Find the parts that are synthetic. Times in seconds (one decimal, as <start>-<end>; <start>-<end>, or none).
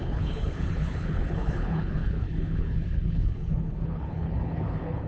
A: 0.0-5.1